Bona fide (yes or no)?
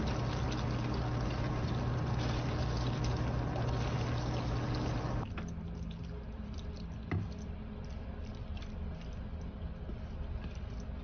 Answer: yes